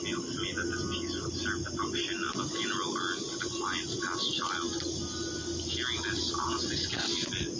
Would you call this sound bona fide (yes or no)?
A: yes